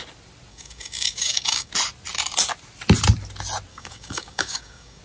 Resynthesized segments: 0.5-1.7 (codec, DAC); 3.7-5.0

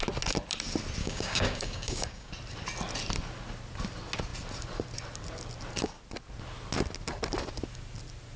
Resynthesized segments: 1.0-2.3 (codec, DAC)

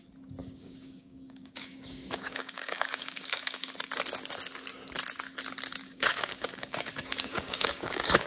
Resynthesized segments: 0.4-3.7 (codec, DAC); 5.8-8.3

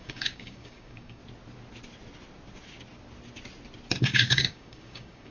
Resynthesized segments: 0.0-1.2 (codec, DAC); 4.0-5.3

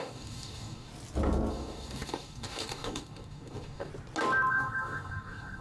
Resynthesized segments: 0.0-0.9 (codec, DAC); 1.5-3.9; 4.5-5.6

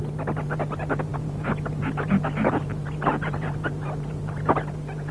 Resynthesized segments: none